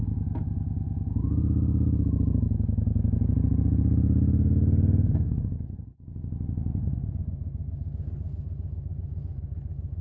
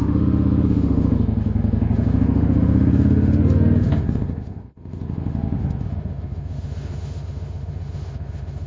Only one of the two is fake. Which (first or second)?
second